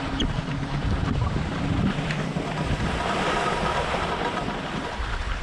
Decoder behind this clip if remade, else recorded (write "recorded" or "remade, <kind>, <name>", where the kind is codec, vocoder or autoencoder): remade, vocoder, BigVGAN v2